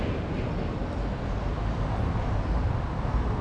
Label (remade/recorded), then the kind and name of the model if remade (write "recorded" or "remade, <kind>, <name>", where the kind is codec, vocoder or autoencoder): recorded